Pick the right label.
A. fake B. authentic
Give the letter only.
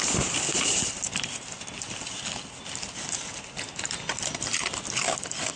B